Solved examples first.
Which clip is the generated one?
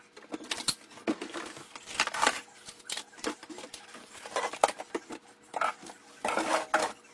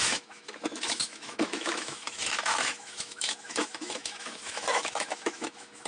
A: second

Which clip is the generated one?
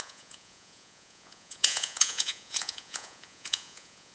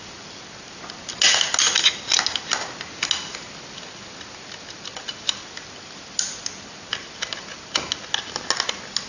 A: first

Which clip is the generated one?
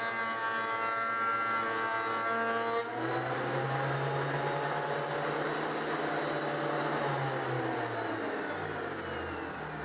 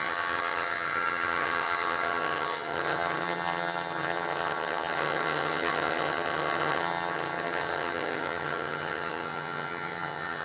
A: second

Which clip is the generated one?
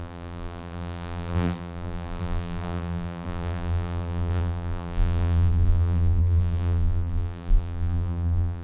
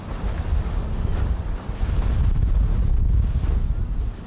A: first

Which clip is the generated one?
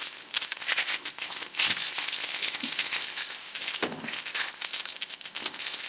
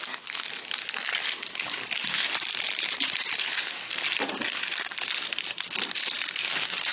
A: first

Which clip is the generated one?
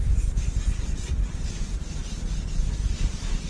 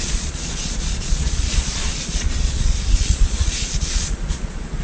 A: second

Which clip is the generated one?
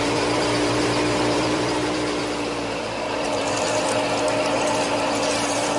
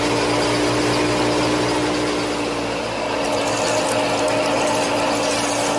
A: first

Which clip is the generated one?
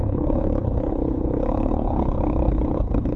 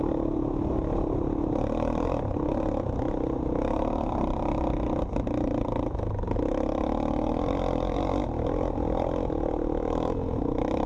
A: first